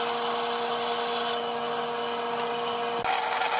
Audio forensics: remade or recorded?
recorded